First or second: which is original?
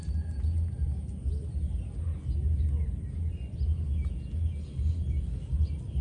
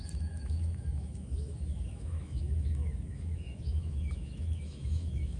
first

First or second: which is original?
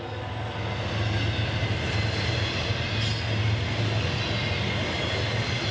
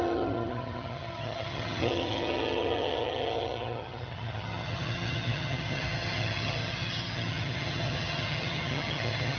first